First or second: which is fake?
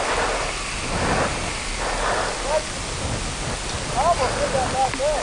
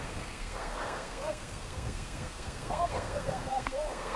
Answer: second